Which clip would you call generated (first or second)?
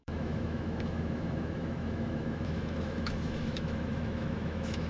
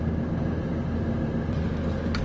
first